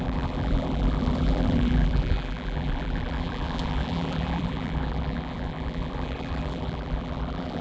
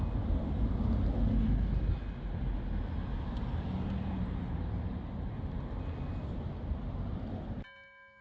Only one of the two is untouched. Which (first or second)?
second